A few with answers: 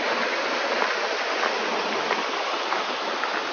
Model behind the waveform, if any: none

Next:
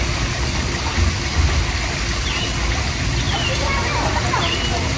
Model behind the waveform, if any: none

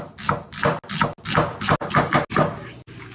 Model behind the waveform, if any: none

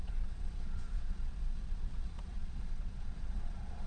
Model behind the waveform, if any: vocoder, Vocos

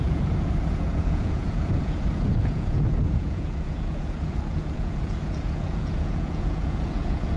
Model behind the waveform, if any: vocoder, Vocos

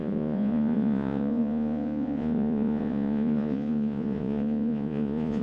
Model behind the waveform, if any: vocoder, Vocos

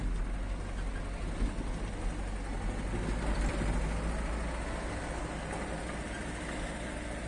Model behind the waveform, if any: none